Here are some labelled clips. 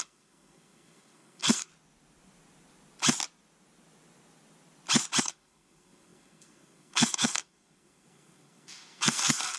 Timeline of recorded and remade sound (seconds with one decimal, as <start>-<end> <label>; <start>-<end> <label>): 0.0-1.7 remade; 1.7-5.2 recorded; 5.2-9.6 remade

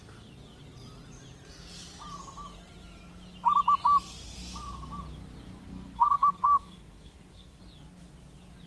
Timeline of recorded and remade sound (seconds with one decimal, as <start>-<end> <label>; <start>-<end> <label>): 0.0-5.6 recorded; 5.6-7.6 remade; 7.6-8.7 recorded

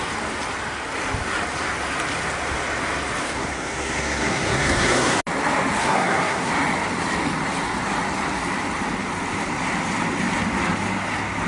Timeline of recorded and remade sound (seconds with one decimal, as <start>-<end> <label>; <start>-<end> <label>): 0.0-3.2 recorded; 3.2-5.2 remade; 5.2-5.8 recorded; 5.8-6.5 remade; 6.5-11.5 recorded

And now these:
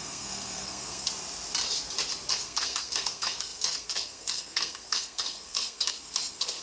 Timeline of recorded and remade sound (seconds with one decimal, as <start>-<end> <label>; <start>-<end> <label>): 0.0-1.1 remade; 1.1-2.3 recorded; 2.3-6.6 remade